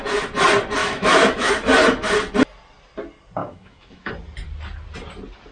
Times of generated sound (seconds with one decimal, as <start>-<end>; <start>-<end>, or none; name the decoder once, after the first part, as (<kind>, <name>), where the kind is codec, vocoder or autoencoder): 0.8-1.5 (autoencoder, DAC-VAE); 3.4-4.1